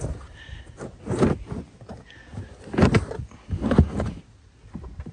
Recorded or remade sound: recorded